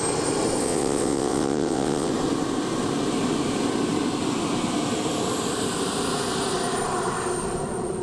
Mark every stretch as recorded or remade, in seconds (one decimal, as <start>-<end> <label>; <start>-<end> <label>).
0.0-0.6 recorded; 0.6-2.1 remade; 2.1-8.0 recorded